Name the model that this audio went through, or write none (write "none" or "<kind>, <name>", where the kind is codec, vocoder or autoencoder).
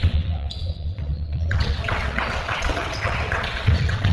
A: vocoder, WaveNeXt